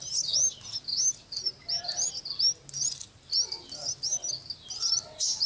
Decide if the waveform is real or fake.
real